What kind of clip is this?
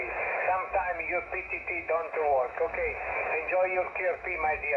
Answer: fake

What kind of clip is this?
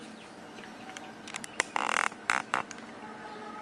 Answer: real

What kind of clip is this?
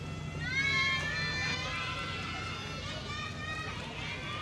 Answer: real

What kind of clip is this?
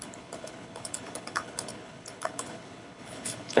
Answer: fake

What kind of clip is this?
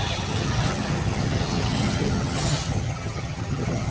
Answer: fake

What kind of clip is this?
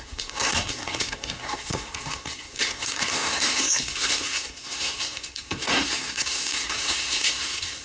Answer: fake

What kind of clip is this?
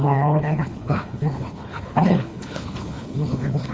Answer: fake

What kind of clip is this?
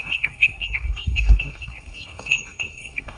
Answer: fake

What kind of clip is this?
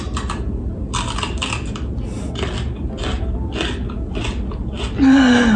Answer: real